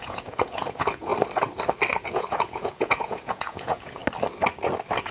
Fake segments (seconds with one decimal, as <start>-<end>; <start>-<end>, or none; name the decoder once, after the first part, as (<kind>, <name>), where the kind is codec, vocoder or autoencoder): 0.0-1.1 (vocoder, Vocos); 2.0-4.0